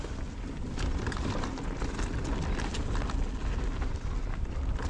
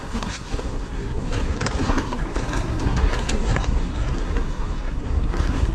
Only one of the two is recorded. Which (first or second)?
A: first